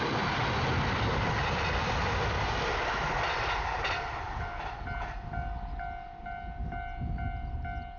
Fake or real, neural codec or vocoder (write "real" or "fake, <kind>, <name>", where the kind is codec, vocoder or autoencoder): real